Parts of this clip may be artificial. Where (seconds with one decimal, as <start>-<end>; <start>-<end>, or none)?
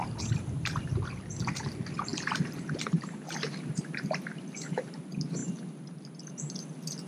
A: 0.0-0.9; 2.1-5.0